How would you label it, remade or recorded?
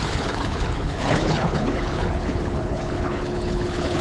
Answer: remade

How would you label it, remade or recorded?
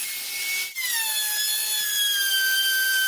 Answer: recorded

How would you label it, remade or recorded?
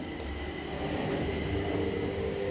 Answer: recorded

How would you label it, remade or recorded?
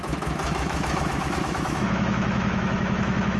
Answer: remade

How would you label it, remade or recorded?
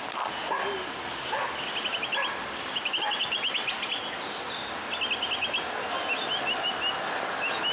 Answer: recorded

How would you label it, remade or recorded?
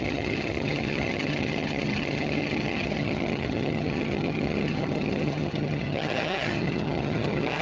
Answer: remade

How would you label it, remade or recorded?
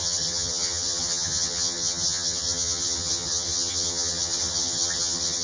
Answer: remade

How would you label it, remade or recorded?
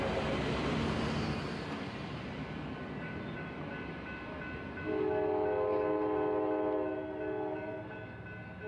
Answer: recorded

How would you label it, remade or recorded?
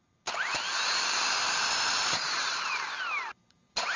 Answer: remade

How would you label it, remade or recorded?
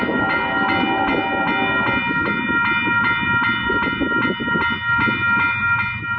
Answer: recorded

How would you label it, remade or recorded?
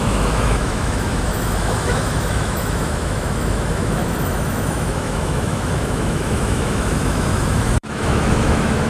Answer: remade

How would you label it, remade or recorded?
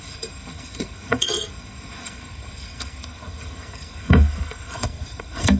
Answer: remade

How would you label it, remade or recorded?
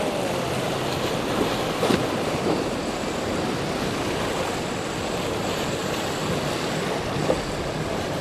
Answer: recorded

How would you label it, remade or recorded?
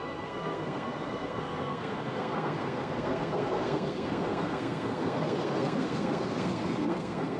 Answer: remade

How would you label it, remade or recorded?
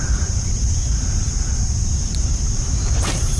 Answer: remade